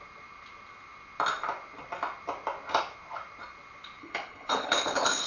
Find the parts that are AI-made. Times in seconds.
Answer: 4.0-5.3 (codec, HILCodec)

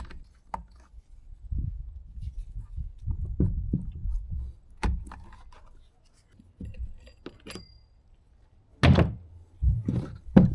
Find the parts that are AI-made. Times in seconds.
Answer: none

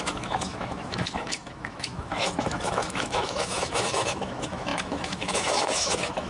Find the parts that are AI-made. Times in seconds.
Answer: 0.0-6.3 (autoencoder, DAC-VAE)

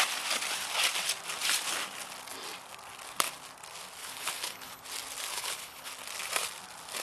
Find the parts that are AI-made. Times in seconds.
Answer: 4.0-4.8 (codec, HILCodec); 5.3-5.9